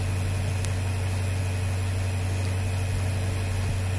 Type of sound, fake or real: real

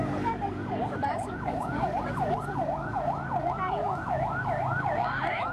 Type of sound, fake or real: fake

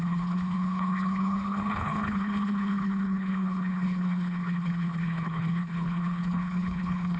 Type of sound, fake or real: fake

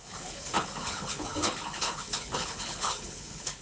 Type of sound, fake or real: fake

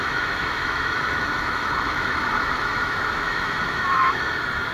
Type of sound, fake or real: fake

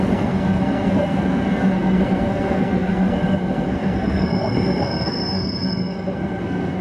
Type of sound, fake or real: fake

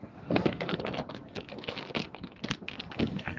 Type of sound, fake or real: fake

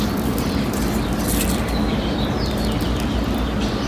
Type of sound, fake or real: real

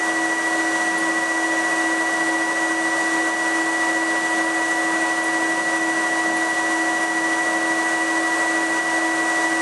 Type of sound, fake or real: real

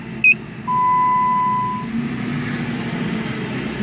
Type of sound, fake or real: real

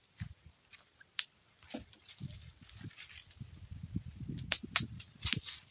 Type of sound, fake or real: real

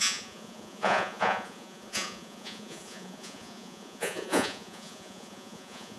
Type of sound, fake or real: fake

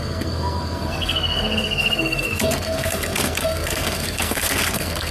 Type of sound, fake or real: fake